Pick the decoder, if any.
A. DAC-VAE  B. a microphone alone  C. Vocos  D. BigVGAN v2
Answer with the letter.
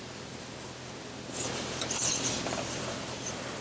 B